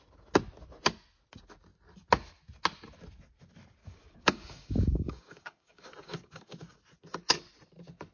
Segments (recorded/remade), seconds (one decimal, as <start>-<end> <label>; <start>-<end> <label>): 0.0-3.8 recorded; 3.8-6.8 remade; 6.8-8.1 recorded